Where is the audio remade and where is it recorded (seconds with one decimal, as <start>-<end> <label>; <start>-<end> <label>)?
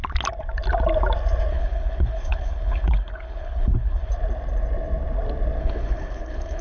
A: 0.0-1.5 recorded; 1.5-4.1 remade; 4.1-5.6 recorded; 5.6-6.6 remade